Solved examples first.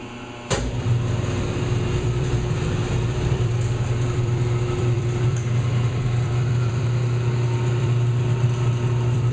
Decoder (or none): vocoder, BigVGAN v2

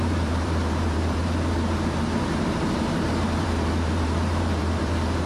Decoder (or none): vocoder, BigVGAN v2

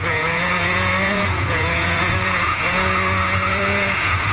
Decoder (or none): vocoder, Vocos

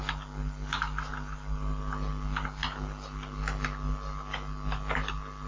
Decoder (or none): none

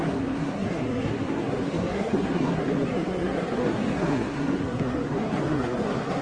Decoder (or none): codec, SNAC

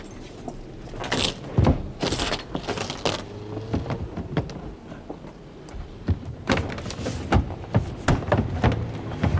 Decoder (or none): none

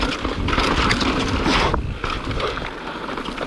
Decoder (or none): none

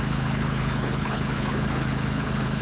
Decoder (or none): codec, HILCodec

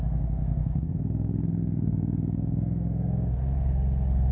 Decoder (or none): codec, SNAC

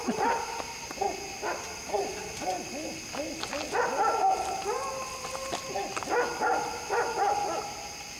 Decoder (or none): none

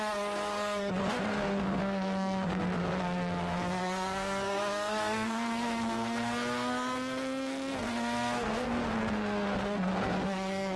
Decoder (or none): codec, SNAC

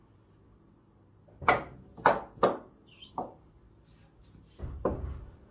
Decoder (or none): none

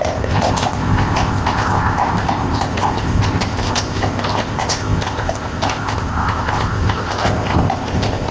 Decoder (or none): codec, ZipCodec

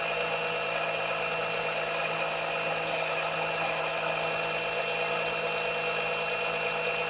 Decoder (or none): none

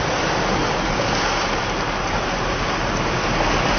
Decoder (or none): none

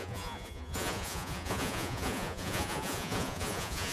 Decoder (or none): vocoder, Vocos